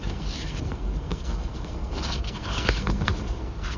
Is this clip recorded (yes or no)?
no